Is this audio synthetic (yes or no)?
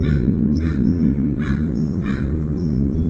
yes